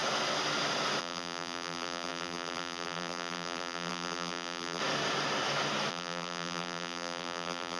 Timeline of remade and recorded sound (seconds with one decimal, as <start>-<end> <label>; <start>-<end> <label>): 0.0-1.0 recorded; 1.0-4.8 remade; 4.8-5.9 recorded; 5.9-7.8 remade